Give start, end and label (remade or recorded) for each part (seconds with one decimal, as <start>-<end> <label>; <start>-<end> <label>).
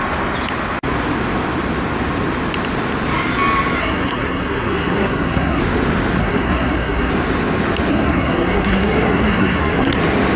0.0-3.8 recorded; 3.8-5.6 remade; 5.6-6.2 recorded; 6.2-7.1 remade; 7.1-7.9 recorded; 7.9-10.0 remade; 10.0-10.4 recorded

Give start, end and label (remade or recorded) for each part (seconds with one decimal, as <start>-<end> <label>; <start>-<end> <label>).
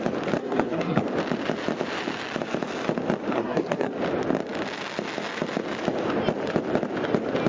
0.0-0.4 recorded; 0.4-1.0 remade; 1.0-3.3 recorded; 3.3-3.9 remade; 3.9-7.5 recorded